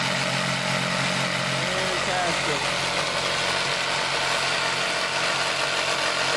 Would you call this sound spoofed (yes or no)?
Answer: no